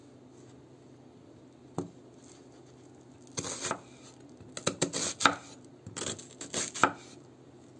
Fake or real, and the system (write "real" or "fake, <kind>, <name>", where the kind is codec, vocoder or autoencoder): real